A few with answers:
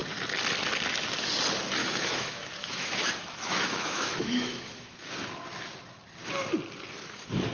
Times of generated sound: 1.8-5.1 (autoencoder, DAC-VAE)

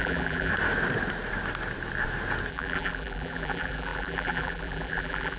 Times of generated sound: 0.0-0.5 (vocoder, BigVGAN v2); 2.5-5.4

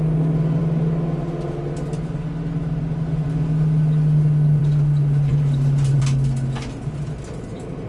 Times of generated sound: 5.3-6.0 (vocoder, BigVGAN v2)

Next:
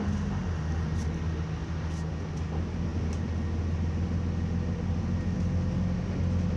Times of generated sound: none

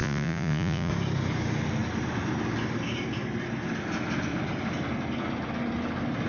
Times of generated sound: 0.0-0.9 (vocoder, Vocos)

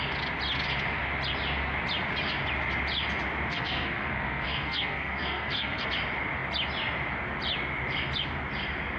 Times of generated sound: 3.5-5.9 (codec, SNAC)